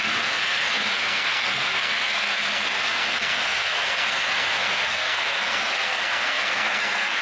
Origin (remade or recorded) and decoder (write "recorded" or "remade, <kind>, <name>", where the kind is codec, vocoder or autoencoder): remade, codec, SNAC